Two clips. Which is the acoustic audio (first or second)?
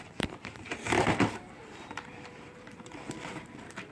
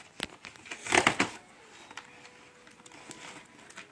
second